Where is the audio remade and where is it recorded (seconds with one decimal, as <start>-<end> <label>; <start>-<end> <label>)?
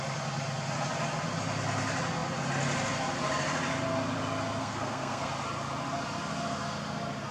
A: 0.0-4.6 recorded; 4.6-5.3 remade; 5.3-7.3 recorded